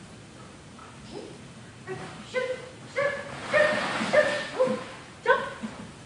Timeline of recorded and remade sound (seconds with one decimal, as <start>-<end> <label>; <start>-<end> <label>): 0.0-6.1 recorded